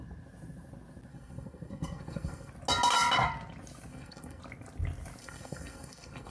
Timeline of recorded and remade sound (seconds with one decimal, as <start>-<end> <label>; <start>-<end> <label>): 0.0-1.1 recorded; 1.1-2.5 remade; 2.5-3.9 recorded; 3.9-4.4 remade; 4.4-5.2 recorded; 5.2-6.3 remade